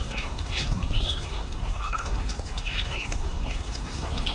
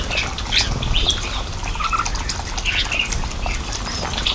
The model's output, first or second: first